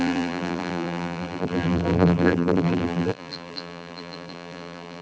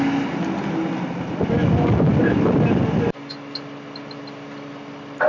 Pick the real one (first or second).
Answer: second